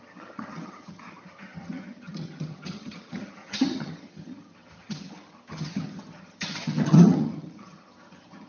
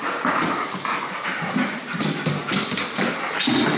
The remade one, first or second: first